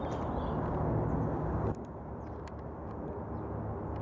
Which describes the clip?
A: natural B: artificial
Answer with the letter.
A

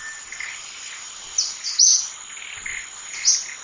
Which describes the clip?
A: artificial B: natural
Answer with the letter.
B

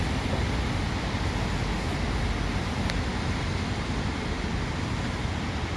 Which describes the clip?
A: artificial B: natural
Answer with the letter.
B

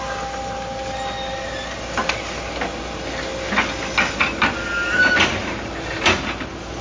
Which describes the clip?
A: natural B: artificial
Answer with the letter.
A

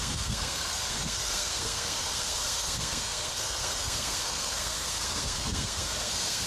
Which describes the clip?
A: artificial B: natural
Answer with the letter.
A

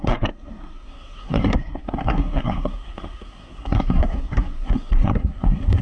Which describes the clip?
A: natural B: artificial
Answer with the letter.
B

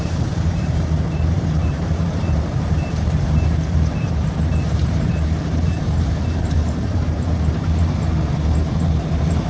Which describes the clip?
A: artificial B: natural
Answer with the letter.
A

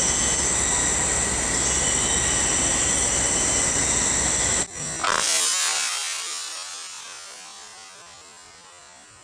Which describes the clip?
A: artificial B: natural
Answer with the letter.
B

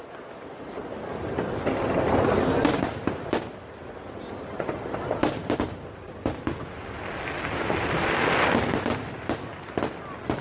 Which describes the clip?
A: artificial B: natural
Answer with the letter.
B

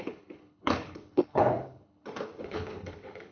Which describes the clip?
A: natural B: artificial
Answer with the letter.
B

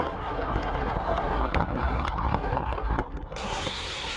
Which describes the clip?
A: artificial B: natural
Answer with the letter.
A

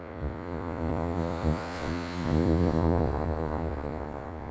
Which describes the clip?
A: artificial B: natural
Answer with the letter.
A